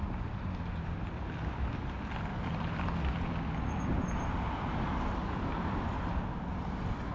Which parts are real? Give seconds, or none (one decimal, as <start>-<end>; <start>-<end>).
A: 0.0-2.3; 2.8-5.2; 6.0-7.1